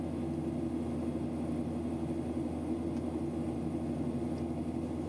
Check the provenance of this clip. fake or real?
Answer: real